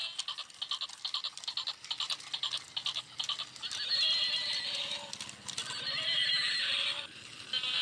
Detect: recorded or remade recorded